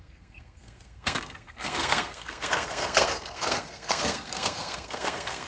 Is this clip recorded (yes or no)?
no